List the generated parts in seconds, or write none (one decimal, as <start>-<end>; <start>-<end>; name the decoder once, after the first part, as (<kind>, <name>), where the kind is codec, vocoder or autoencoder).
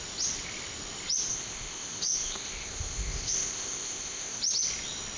1.3-4.4 (codec, ZipCodec)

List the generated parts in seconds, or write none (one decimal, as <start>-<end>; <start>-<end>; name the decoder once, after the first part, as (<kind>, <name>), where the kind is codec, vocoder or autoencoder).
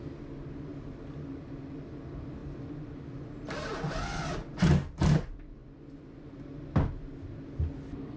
none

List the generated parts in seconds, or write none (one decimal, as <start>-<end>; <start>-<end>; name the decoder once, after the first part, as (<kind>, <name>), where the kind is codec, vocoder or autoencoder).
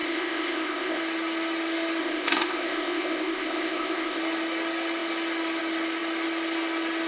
0.0-1.0 (codec, ZipCodec); 2.0-4.2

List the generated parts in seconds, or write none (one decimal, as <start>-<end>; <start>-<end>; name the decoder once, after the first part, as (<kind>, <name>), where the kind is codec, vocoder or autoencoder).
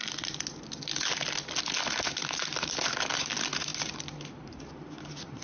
none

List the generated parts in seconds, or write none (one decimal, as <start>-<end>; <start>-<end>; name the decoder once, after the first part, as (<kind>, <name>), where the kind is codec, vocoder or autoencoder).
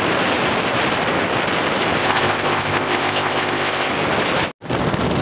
2.0-3.9 (codec, ZipCodec)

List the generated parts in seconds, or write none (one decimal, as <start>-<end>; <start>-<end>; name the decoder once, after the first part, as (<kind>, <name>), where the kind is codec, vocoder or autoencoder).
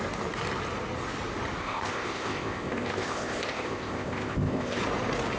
1.6-4.8 (codec, ZipCodec)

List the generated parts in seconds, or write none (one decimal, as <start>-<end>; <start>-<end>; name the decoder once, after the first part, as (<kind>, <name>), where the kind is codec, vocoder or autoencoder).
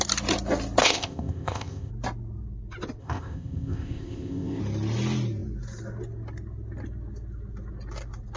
0.8-1.9 (codec, ZipCodec); 3.0-4.6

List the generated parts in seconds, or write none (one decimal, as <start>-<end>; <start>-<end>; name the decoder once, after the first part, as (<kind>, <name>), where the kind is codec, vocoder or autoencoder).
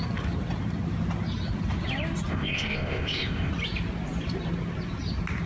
2.3-3.5 (codec, ZipCodec)